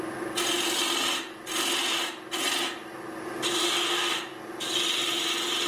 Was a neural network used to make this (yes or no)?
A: no